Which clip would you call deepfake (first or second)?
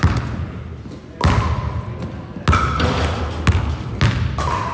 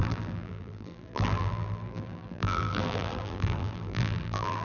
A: second